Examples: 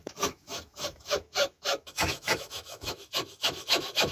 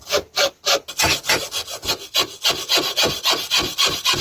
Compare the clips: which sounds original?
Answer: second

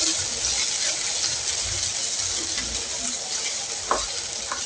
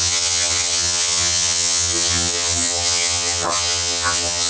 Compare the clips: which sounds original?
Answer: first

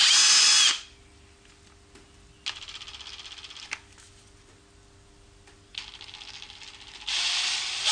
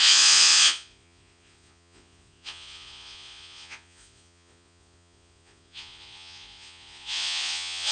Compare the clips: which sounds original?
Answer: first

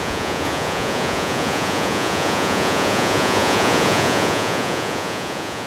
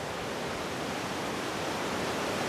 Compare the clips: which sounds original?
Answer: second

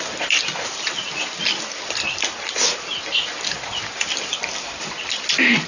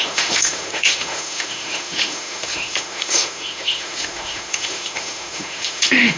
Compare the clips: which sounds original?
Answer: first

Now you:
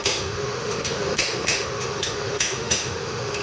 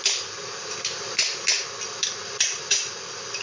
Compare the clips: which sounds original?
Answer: second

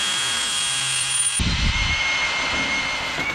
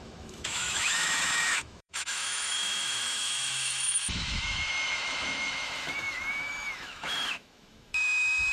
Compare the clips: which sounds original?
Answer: first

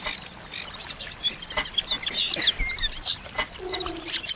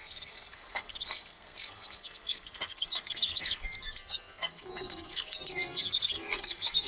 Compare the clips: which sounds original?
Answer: first